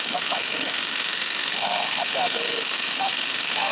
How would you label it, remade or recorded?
remade